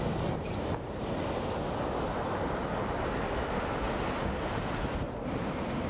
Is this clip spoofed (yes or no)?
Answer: no